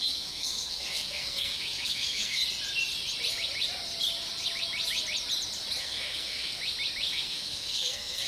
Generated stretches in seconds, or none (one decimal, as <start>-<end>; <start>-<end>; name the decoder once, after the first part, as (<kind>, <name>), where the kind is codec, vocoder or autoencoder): 0.0-2.4 (codec, SNAC); 5.8-6.6; 7.1-8.3